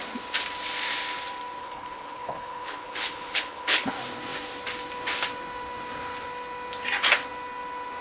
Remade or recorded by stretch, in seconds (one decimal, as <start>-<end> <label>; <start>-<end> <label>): 0.0-1.6 recorded; 1.6-3.9 remade; 3.9-8.0 recorded